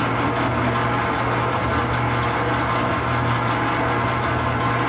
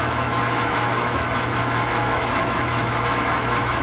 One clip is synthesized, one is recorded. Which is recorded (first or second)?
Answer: first